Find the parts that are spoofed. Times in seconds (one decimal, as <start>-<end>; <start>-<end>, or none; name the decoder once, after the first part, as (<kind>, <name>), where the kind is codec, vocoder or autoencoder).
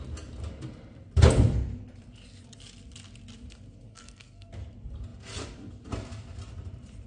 3.9-4.5 (codec, SNAC)